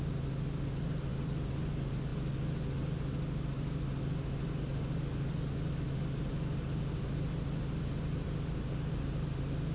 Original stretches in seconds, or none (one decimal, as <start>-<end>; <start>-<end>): 0.0-9.7